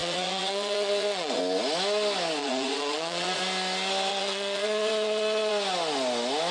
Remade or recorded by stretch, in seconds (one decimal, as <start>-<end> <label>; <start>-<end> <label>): 0.0-1.4 remade; 1.4-2.4 recorded; 2.4-3.4 remade; 3.4-4.1 recorded; 4.1-5.5 remade; 5.5-6.5 recorded